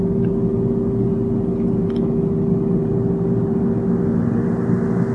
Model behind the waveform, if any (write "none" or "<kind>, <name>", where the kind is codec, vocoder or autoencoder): none